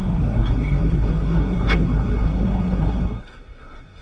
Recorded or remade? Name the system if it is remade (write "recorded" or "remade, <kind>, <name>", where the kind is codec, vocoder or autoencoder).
remade, codec, SNAC